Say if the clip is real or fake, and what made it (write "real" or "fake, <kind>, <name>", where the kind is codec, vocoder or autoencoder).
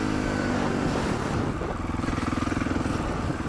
real